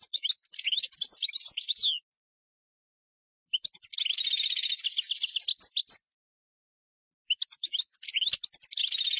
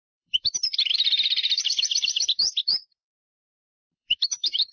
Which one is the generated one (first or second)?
second